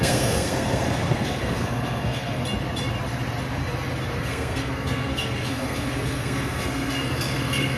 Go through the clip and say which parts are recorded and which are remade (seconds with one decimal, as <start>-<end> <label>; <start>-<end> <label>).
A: 0.0-2.4 remade; 2.4-4.2 recorded; 4.2-7.8 remade

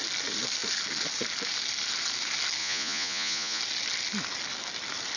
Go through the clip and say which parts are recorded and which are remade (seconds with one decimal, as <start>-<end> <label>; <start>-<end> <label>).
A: 0.0-2.6 recorded; 2.6-3.6 remade; 3.6-5.2 recorded

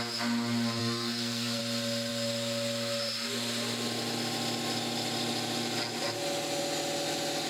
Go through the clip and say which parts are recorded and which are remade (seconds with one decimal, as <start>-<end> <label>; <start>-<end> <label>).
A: 0.0-0.8 recorded; 0.8-1.6 remade; 1.6-7.5 recorded

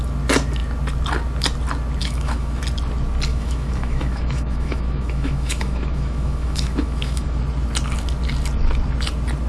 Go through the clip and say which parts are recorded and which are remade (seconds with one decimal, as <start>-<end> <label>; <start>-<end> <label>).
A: 0.0-2.0 recorded; 2.0-2.6 remade; 2.6-3.3 recorded; 3.3-7.4 remade; 7.4-9.5 recorded

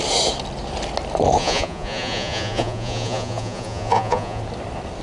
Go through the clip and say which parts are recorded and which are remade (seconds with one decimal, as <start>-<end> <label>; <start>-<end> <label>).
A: 0.0-1.4 recorded; 1.4-4.4 remade; 4.4-5.0 recorded

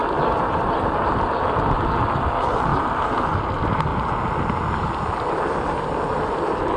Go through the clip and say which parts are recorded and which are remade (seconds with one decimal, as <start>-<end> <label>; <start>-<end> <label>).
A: 0.0-0.8 recorded; 0.8-2.7 remade; 2.7-3.4 recorded; 3.4-3.9 remade; 3.9-5.3 recorded; 5.3-6.8 remade

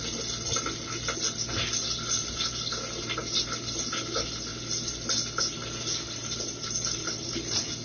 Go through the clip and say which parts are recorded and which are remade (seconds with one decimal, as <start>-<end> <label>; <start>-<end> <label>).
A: 0.0-7.8 recorded

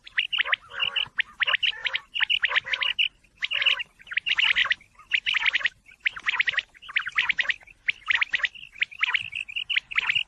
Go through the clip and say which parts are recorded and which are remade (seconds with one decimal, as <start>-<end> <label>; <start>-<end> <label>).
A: 0.0-10.3 recorded